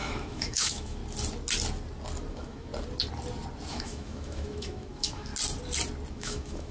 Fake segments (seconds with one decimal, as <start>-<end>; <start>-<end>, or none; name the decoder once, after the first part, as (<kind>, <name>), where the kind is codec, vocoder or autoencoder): 0.0-1.0 (autoencoder, DAC-VAE); 2.3-2.7; 3.7-5.3; 6.1-6.7